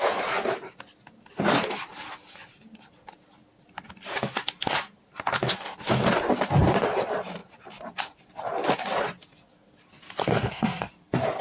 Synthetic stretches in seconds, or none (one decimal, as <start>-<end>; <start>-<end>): 10.2-10.9